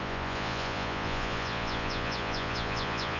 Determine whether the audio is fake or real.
fake